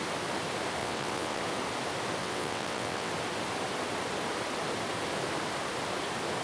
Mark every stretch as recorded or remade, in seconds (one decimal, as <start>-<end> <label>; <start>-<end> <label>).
0.0-0.8 recorded; 0.8-1.4 remade; 1.4-2.2 recorded; 2.2-3.1 remade; 3.1-6.4 recorded